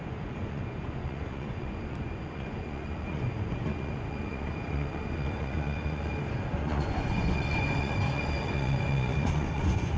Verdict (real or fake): fake